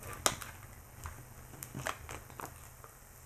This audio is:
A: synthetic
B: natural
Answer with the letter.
B